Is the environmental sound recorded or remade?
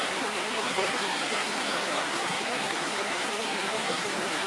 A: remade